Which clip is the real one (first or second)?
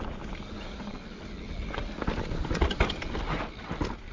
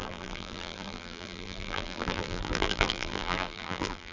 first